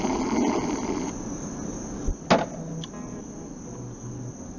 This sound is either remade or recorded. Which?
recorded